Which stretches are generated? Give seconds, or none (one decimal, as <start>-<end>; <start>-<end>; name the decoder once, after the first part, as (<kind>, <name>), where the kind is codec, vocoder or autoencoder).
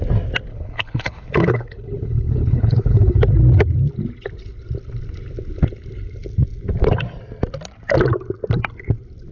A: 0.5-3.2 (codec, HILCodec)